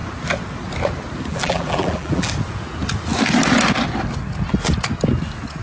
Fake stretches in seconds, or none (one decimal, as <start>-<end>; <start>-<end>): 1.3-2.3